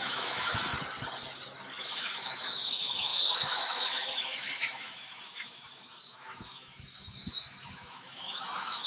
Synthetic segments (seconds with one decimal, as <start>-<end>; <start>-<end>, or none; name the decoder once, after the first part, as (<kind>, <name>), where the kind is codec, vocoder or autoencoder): 0.0-0.7 (autoencoder, DAC-VAE); 1.8-8.9